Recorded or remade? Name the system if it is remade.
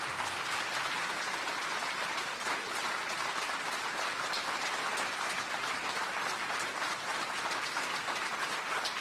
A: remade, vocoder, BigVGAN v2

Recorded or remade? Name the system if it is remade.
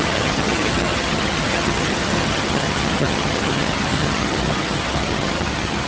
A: remade, vocoder, HiFi-GAN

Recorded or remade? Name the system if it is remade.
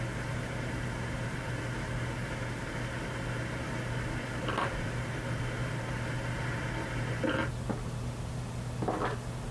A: remade, vocoder, BigVGAN v2